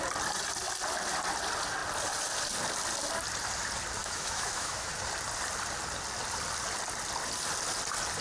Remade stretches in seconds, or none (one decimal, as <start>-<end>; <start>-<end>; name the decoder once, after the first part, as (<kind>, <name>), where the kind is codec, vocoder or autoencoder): 4.0-4.9 (autoencoder, DAC-VAE)